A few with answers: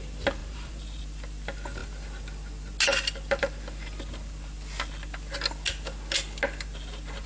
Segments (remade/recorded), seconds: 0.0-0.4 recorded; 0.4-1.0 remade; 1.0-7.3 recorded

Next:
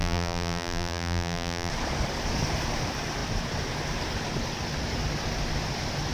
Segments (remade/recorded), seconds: 0.0-1.7 remade; 1.7-6.1 recorded

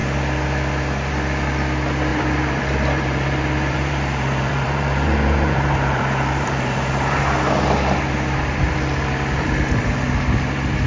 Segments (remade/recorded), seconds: 0.0-2.1 recorded; 2.1-7.2 remade; 7.2-10.9 recorded